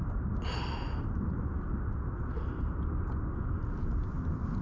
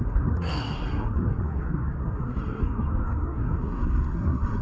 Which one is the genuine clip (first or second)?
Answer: first